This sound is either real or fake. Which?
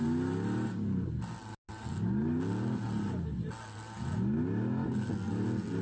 real